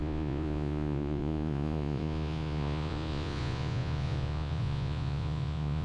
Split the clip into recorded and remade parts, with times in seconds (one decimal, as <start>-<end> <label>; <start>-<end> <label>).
0.0-5.8 remade

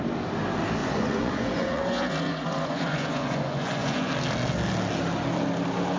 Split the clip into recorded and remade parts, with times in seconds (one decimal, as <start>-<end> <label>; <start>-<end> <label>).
0.0-0.8 recorded; 0.8-4.1 remade; 4.1-6.0 recorded

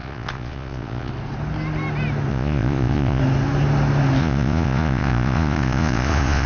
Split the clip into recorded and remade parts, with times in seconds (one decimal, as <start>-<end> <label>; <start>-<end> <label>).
0.0-1.1 remade; 1.1-2.3 recorded; 2.3-3.2 remade; 3.2-4.2 recorded; 4.2-6.5 remade

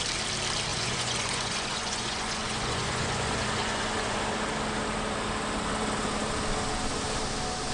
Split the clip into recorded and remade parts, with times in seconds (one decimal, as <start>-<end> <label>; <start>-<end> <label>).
0.0-0.7 recorded; 0.7-4.2 remade; 4.2-7.7 recorded

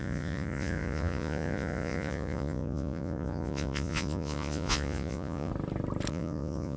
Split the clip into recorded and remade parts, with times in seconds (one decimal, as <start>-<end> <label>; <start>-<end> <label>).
0.0-5.5 remade; 5.5-6.1 recorded; 6.1-6.8 remade